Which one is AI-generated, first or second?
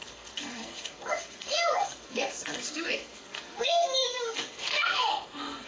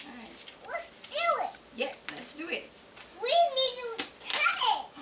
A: first